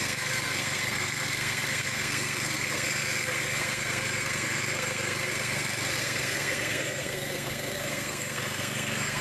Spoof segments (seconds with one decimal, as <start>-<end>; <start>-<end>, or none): 0.0-9.2